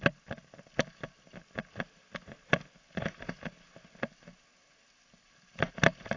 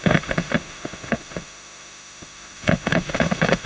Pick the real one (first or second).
first